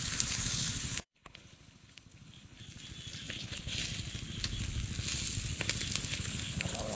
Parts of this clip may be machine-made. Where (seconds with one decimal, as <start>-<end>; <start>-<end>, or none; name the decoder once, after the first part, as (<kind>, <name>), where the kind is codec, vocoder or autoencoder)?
0.0-2.6 (codec, HILCodec); 3.3-3.8; 6.0-6.9